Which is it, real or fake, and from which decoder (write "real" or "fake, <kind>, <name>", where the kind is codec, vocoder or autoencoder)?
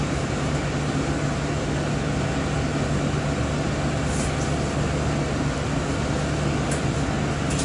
real